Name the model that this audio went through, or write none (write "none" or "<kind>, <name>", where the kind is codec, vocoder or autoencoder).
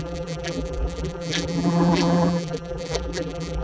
vocoder, BigVGAN v2